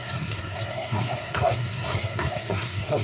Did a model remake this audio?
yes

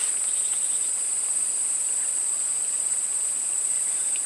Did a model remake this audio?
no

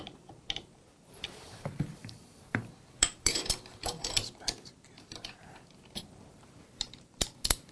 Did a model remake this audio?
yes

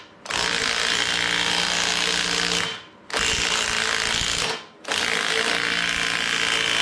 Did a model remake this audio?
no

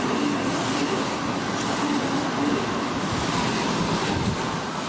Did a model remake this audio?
no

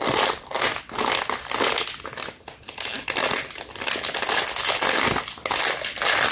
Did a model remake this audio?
no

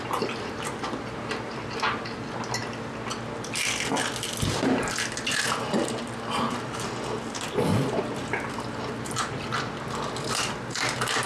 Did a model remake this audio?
no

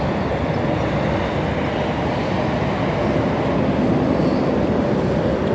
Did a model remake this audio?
yes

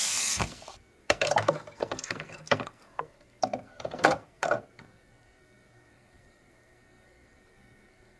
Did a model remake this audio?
yes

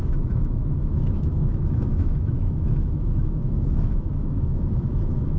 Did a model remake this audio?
yes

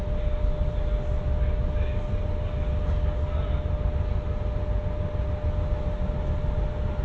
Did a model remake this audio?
no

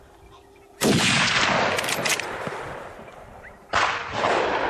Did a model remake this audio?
no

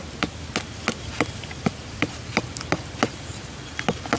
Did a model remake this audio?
no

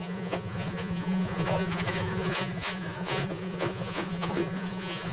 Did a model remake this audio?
yes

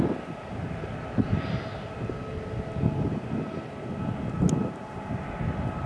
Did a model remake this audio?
no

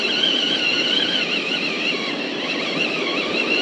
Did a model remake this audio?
no